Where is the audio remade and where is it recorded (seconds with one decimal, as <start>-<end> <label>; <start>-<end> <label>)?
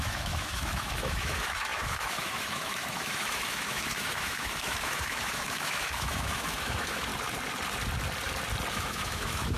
0.0-7.1 remade; 7.1-8.7 recorded; 8.7-9.6 remade